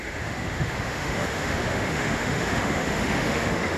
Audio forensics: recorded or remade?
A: remade